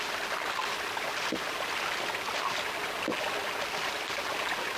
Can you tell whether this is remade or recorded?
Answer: recorded